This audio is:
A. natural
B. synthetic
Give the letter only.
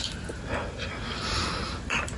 A